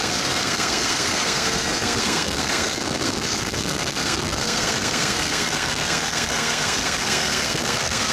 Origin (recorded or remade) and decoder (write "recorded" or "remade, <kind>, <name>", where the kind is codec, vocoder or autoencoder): remade, codec, SNAC